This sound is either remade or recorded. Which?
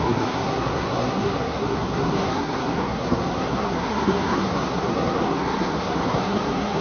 remade